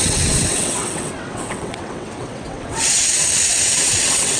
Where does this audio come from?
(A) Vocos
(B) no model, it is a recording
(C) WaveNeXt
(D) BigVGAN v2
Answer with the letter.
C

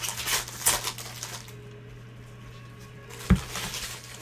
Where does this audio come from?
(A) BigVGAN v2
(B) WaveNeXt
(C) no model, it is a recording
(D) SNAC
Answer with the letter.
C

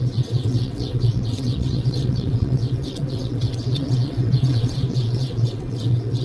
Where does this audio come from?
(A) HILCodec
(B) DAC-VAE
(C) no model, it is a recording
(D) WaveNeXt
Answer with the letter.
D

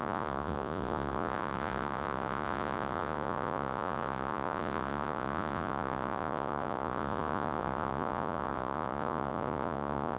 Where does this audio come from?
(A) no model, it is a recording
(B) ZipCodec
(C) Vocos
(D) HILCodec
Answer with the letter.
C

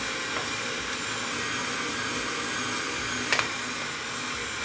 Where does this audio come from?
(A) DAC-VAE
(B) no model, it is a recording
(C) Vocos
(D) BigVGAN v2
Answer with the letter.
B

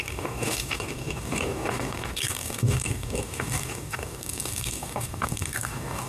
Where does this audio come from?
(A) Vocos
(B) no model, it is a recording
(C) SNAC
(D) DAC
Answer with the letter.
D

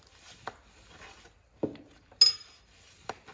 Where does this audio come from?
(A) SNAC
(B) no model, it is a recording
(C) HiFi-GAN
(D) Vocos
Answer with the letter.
B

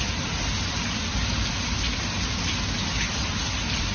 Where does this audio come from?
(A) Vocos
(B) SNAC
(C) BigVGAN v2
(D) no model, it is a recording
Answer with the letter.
D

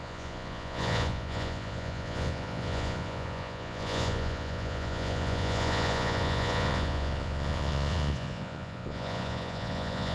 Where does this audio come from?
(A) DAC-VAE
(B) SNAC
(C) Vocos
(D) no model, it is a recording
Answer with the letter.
C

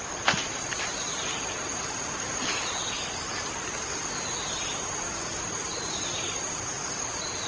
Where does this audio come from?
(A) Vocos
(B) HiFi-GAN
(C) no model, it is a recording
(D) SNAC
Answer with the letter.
C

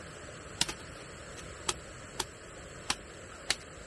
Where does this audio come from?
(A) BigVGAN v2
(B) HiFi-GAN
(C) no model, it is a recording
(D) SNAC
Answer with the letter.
C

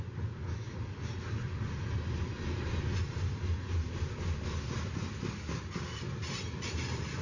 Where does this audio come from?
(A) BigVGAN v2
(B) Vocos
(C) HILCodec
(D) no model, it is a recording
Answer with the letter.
D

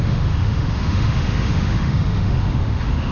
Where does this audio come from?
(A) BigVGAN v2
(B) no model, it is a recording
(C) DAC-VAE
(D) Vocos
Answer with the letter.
C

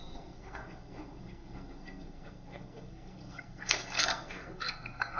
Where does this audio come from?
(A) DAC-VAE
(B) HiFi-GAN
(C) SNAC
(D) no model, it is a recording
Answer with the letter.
C